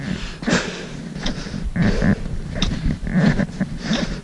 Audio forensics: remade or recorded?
remade